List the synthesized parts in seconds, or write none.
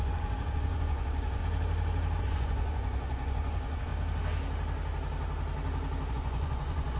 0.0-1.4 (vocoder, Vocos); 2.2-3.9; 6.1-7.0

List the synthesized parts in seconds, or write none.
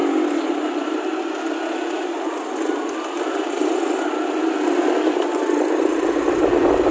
none